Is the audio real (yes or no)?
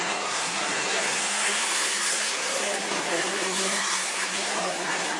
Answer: no